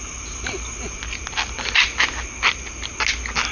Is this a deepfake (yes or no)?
no